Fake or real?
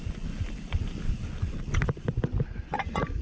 real